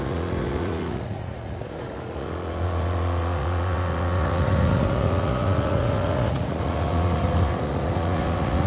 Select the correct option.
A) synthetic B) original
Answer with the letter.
A